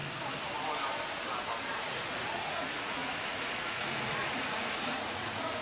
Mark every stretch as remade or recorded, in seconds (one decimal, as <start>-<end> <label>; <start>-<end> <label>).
0.0-1.6 recorded; 1.6-5.6 remade